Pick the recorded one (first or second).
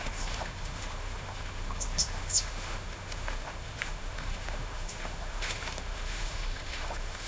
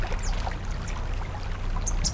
second